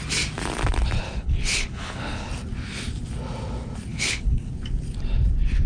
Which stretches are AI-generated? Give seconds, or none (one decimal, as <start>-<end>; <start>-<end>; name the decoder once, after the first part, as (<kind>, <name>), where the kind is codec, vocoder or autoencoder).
1.0-2.3 (codec, HILCodec); 3.9-4.5

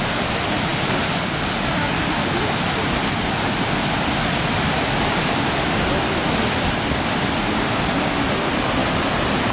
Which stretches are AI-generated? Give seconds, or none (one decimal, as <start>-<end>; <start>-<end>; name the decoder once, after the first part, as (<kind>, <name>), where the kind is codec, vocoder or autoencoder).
none

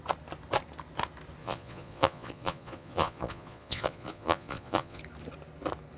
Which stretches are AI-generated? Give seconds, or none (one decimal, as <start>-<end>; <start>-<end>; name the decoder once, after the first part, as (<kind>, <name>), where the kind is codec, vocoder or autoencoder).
1.4-5.0 (vocoder, Vocos)

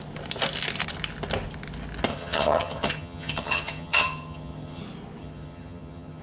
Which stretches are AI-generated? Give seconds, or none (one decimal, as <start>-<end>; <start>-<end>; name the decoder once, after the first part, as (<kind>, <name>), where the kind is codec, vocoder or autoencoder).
2.1-4.8 (vocoder, HiFi-GAN); 5.2-6.2

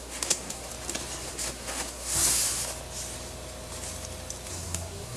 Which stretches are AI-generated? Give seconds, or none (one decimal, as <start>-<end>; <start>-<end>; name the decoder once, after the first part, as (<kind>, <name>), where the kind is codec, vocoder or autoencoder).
0.0-0.7 (codec, SNAC); 1.3-2.4; 4.5-5.2

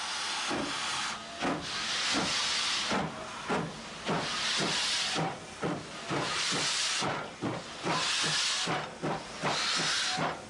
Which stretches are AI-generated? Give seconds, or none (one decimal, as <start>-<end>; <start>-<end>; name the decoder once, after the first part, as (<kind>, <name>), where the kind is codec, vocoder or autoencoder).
none